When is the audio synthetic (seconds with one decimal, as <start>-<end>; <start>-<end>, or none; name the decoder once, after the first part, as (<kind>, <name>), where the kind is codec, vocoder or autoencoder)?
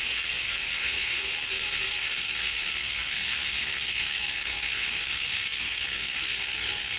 0.0-7.0 (codec, SNAC)